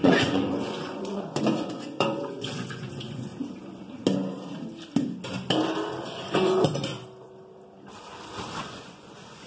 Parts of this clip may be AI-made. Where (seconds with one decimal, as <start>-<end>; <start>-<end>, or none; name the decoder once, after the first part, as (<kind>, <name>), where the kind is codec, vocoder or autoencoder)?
0.0-3.3 (vocoder, Vocos); 6.0-6.9; 8.6-9.5